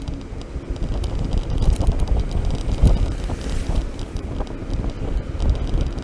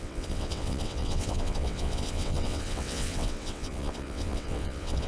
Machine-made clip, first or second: second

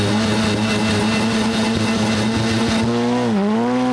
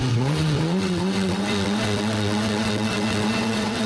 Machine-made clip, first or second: second